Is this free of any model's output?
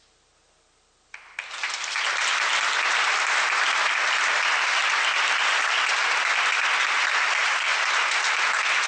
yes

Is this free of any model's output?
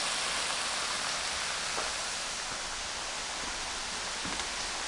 yes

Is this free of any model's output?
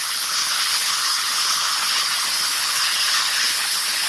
no